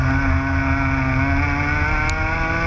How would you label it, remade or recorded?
recorded